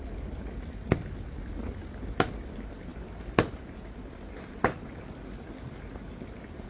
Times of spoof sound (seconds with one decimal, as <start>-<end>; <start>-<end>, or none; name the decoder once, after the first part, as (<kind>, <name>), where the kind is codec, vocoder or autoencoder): none